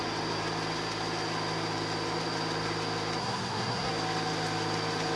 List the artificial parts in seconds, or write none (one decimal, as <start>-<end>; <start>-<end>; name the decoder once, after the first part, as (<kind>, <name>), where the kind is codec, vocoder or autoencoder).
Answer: 3.2-3.9 (codec, SNAC)